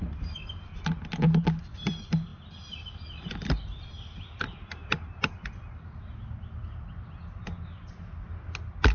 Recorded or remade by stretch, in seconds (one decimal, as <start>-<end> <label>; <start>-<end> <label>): 0.0-8.9 recorded